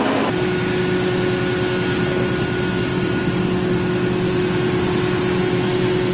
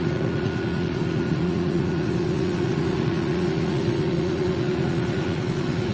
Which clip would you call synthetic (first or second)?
second